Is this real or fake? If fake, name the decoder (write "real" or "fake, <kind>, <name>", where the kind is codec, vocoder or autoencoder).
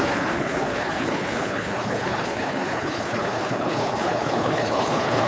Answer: fake, codec, HILCodec